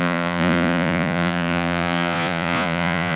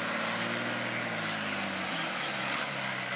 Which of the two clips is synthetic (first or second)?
first